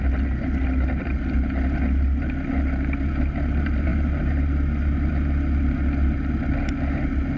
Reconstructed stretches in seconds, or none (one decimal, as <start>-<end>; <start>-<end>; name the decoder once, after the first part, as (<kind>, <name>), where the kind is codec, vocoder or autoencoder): none